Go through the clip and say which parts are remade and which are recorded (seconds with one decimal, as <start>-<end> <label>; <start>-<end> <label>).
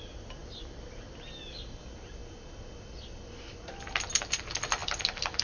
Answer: 0.0-5.4 recorded